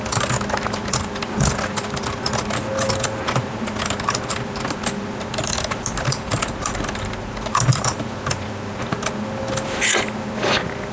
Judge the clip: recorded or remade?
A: recorded